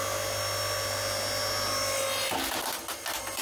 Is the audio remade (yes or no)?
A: no